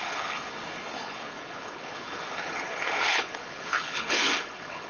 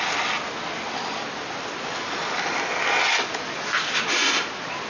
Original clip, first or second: second